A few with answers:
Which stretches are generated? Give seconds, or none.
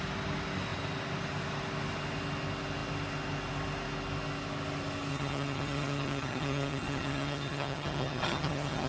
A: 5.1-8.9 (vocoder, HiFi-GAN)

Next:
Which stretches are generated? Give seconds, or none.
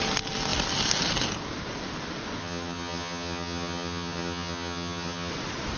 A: 2.4-5.3 (vocoder, HiFi-GAN)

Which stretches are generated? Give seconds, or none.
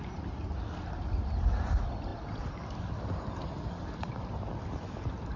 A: none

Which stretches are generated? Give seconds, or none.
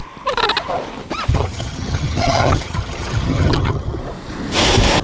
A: 1.3-4.0 (vocoder, HiFi-GAN)